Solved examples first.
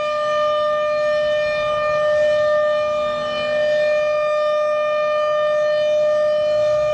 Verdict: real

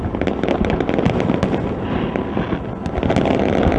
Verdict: real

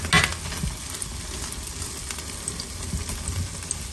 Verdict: real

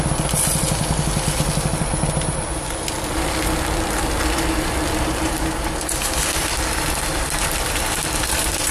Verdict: fake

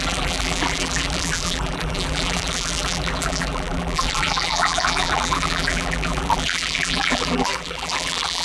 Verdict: fake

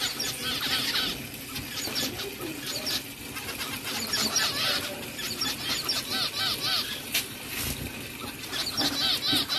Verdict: real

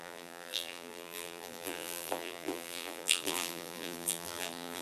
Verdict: fake